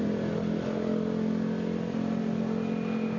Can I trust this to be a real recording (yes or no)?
yes